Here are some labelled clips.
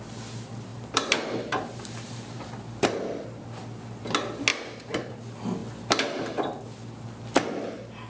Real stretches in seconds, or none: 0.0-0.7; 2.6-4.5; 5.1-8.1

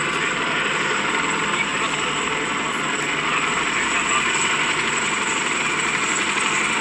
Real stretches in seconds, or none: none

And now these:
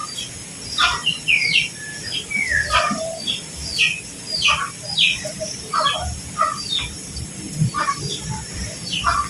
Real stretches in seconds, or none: 0.0-9.3